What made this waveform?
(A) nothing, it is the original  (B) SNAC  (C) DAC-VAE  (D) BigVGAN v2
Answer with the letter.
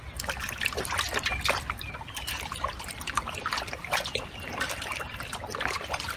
A